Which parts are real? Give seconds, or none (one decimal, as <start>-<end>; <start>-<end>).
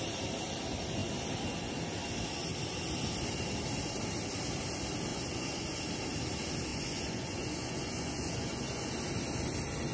0.0-5.1; 5.8-6.7; 8.9-9.9